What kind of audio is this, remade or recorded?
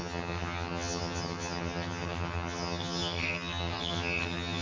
remade